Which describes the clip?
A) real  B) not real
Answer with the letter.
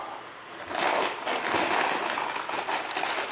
A